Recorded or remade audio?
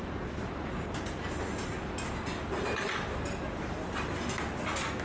recorded